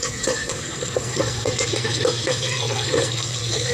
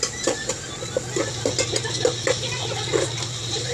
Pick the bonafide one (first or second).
second